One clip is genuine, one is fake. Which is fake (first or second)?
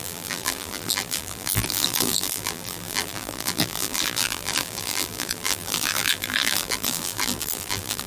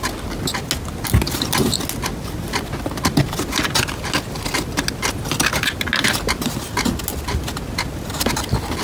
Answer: first